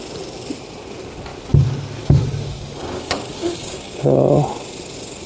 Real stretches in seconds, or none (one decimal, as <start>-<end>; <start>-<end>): 0.0-2.8; 4.2-5.3